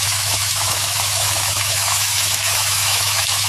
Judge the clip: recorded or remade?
remade